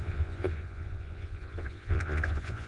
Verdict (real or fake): fake